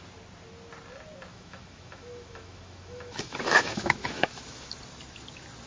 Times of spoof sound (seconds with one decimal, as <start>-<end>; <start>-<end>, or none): 1.3-4.7